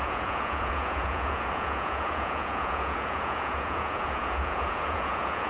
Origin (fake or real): fake